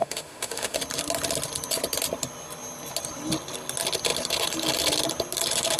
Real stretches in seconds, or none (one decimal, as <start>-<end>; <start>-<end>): 0.8-5.8